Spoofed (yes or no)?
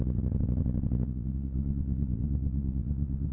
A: yes